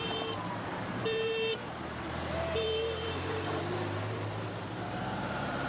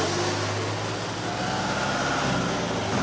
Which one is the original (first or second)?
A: second